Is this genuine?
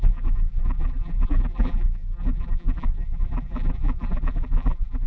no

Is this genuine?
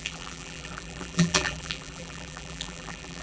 no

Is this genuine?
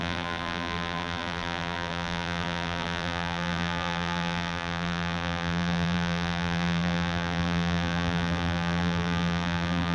no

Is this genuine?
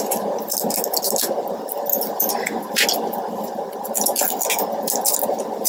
yes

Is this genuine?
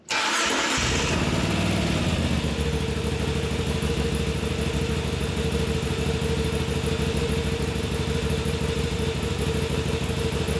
yes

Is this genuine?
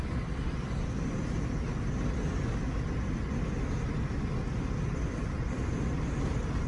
yes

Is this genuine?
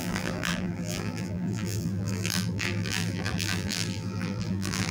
no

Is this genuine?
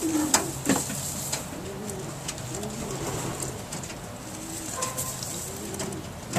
yes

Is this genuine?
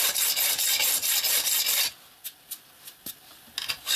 yes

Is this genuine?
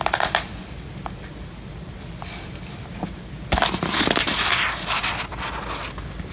yes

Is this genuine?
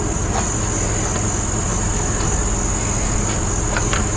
yes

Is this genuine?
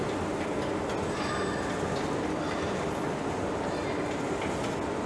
yes